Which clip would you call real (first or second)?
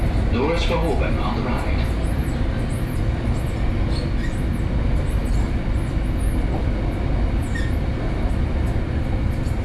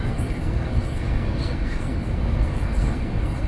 first